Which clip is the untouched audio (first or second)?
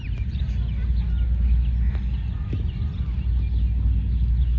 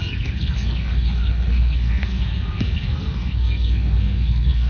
first